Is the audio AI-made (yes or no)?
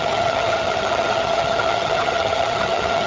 yes